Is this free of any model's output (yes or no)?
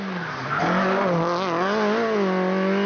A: yes